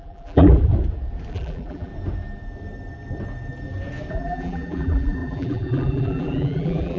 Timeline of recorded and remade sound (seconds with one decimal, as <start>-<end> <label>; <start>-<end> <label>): 0.0-0.7 remade; 0.7-1.3 recorded; 1.3-1.9 remade; 1.9-4.1 recorded; 4.1-7.0 remade